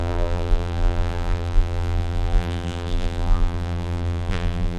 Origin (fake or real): fake